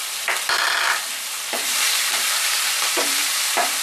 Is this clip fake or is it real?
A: fake